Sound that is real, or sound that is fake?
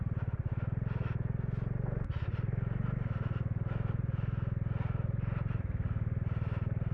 real